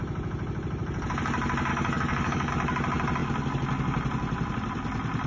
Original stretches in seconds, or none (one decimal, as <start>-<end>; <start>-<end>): 0.0-1.7; 2.5-5.3